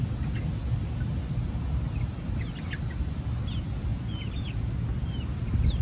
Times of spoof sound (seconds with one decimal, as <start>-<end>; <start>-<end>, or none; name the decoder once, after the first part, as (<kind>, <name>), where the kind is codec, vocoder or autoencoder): 3.9-4.7 (vocoder, Vocos)